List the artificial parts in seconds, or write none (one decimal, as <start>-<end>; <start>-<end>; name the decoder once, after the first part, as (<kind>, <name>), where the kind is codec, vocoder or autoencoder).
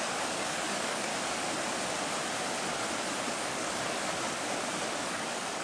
0.0-1.1 (codec, DAC); 3.3-4.1; 4.9-5.6